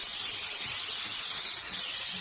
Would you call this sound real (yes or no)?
no